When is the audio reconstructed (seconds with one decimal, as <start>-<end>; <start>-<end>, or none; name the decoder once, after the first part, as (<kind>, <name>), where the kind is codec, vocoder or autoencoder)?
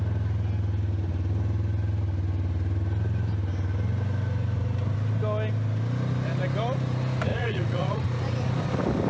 7.3-8.0 (vocoder, Vocos)